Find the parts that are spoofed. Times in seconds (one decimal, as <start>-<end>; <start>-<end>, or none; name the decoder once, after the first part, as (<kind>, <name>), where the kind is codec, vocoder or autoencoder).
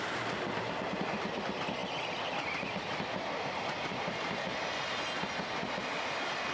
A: none